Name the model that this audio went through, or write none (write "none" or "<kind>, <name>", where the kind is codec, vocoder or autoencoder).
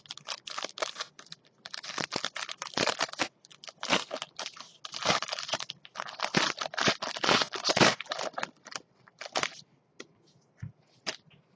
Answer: none